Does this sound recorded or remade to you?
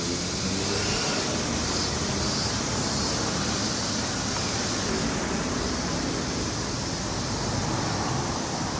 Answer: recorded